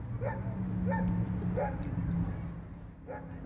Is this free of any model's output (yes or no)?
yes